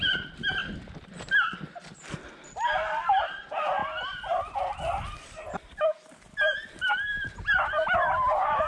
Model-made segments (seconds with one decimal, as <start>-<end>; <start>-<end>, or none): none